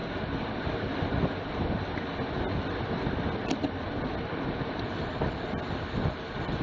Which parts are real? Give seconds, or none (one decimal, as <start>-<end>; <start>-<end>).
0.0-6.6